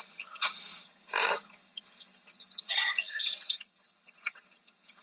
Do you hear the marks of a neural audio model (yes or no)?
yes